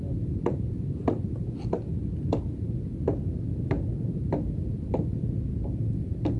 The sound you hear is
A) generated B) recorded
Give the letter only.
B